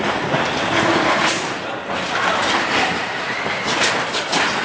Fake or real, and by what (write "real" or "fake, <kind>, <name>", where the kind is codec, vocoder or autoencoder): real